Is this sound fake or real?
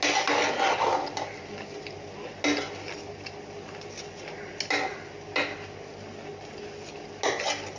real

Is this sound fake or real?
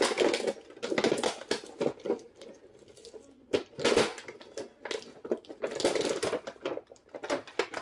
real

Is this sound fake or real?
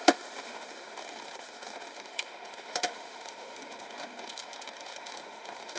fake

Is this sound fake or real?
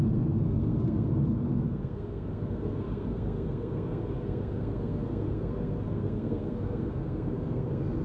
fake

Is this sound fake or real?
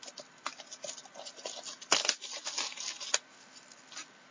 real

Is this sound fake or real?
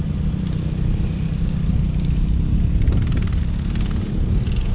real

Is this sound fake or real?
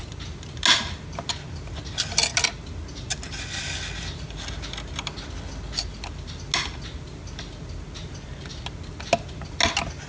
real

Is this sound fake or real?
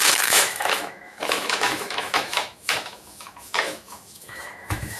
fake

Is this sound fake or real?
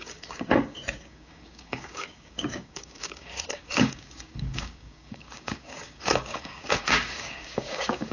fake